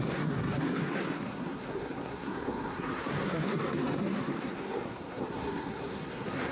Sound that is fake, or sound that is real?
fake